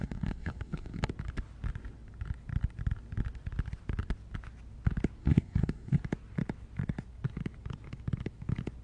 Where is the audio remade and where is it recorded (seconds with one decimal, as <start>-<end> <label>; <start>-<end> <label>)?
0.0-1.0 remade; 1.0-5.2 recorded; 5.2-6.0 remade; 6.0-8.8 recorded